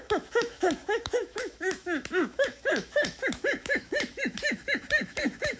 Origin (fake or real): fake